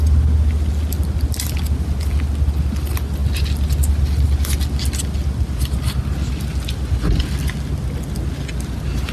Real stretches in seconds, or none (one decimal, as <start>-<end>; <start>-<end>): 0.0-9.1

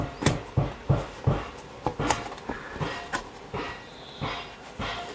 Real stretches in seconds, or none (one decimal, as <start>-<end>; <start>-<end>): 0.0-1.9

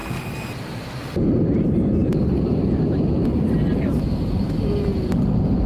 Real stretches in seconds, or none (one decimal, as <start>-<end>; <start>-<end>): 0.0-0.6

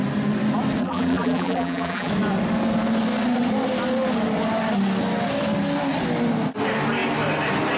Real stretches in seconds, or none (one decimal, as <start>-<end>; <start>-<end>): 0.0-0.8; 2.1-7.8

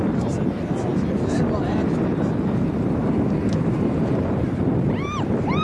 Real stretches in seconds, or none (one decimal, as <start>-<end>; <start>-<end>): 0.9-4.3